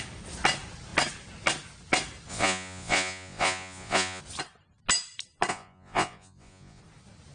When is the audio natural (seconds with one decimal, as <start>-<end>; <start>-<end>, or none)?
0.0-2.3; 4.2-5.5; 6.8-7.3